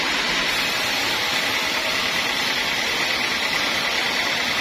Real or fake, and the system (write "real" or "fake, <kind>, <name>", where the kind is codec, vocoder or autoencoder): real